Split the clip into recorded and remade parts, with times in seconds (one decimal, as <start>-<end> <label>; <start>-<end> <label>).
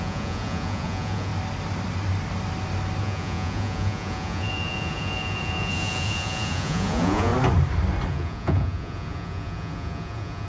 0.0-1.3 remade; 1.3-3.0 recorded; 3.0-7.3 remade; 7.3-8.1 recorded; 8.1-10.5 remade